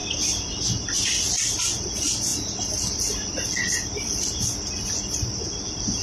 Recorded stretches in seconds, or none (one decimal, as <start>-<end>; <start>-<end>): 0.0-6.0

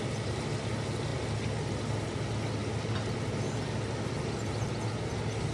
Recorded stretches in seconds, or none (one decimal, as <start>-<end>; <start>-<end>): 0.0-5.5

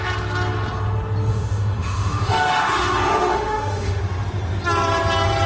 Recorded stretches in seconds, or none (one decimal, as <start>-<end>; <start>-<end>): 0.0-1.3; 4.0-5.5

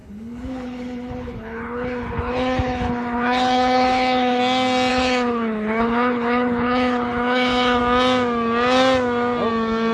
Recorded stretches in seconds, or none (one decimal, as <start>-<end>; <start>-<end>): 4.4-4.9; 7.8-9.9

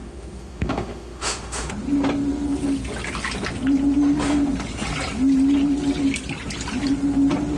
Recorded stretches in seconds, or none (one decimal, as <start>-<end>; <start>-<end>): 1.7-7.6